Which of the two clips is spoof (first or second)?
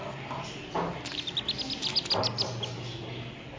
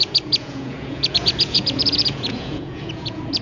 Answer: second